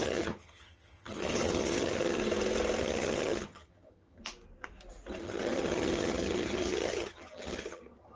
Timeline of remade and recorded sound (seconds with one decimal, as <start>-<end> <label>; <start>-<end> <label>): 0.0-2.2 remade; 2.2-2.8 recorded; 2.8-4.2 remade; 4.2-5.2 recorded; 5.2-8.2 remade